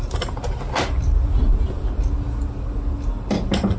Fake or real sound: real